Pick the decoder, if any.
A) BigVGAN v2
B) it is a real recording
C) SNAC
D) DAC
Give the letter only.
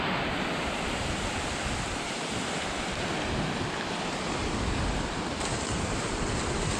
A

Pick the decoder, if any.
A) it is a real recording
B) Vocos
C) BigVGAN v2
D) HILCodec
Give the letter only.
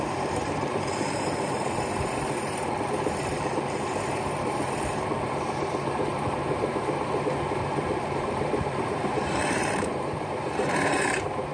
C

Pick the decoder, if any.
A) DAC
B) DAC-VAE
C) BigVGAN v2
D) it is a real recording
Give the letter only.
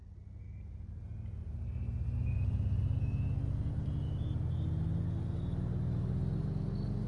D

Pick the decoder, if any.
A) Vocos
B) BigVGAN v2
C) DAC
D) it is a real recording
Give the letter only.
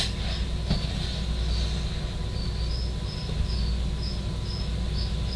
D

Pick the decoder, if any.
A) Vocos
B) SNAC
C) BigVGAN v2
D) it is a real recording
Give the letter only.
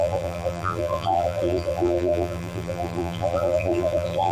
C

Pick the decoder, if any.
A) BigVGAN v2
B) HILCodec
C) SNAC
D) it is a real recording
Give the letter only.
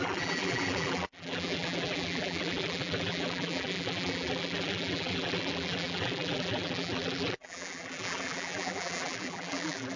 A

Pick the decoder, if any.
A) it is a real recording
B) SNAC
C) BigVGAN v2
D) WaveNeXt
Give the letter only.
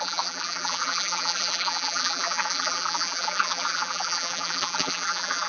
C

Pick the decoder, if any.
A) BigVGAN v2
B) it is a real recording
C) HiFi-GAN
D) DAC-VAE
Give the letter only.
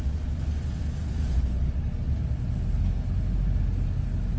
B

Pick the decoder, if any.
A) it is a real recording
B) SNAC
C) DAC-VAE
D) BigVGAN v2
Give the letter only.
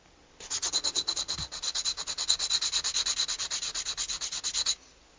A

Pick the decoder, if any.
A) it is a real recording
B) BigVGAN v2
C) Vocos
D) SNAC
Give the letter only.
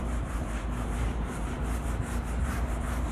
B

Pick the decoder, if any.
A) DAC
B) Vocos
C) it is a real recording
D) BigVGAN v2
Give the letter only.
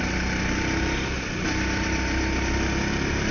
C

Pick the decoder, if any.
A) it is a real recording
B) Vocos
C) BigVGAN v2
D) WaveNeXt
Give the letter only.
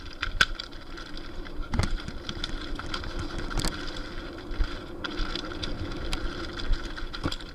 A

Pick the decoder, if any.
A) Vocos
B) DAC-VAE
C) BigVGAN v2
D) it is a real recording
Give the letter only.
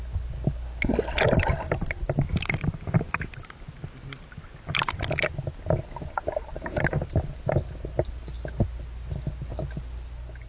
D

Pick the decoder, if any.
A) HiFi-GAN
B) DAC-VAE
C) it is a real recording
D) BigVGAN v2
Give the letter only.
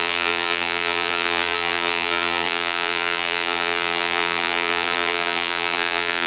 D